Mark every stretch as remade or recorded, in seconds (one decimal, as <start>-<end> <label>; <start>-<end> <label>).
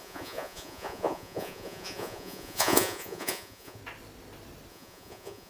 0.0-3.8 remade; 3.8-4.7 recorded; 4.7-5.5 remade